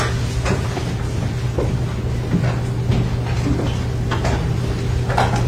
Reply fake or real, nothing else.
real